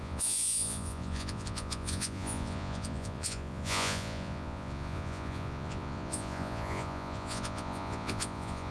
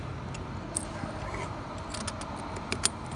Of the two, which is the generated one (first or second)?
first